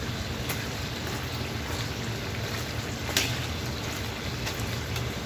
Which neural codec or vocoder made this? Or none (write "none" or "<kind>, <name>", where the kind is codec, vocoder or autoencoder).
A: none